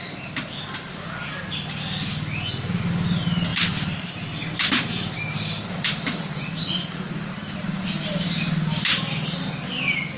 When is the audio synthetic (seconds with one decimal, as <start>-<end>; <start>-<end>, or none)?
none

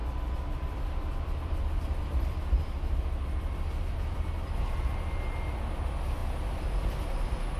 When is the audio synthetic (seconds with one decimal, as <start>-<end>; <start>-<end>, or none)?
0.0-4.6

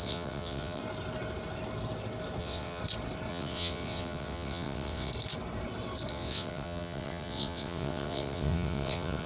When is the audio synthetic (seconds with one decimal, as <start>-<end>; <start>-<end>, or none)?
0.0-0.8; 2.4-2.8; 3.3-5.1; 6.1-9.3

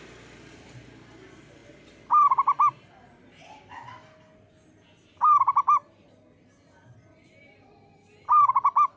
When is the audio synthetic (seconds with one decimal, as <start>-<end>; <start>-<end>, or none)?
none

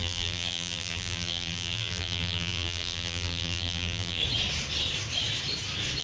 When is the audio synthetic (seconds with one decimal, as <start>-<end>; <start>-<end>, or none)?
0.0-4.2

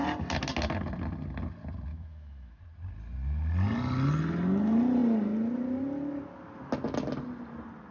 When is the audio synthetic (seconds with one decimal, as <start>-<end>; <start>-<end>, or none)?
1.9-2.6

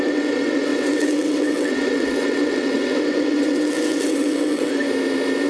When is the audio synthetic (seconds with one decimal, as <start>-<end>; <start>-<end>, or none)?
0.0-4.7

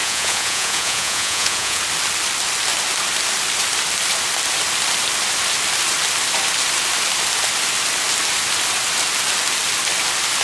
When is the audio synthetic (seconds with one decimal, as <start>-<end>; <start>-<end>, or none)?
0.0-1.8